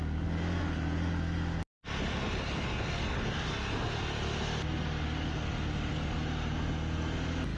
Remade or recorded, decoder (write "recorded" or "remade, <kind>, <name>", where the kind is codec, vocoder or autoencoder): recorded